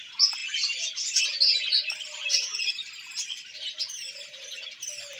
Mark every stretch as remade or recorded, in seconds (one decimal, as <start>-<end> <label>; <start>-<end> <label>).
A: 0.0-5.2 recorded